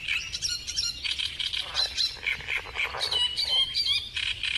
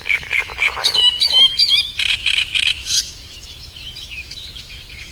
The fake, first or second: second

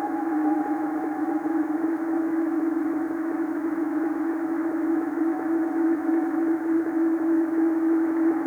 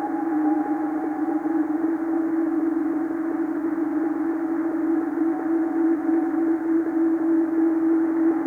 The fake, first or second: first